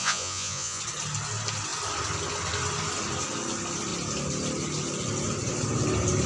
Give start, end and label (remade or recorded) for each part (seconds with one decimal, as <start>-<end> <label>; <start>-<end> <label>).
0.0-0.8 remade; 0.8-6.3 recorded